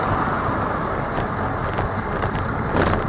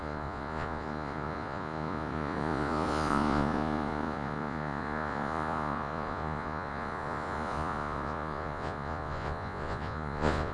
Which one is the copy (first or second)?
second